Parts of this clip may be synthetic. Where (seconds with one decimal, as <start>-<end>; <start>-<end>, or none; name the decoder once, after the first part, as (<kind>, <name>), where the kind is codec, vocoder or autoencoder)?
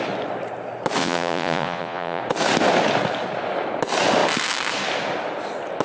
1.0-2.2 (vocoder, Vocos)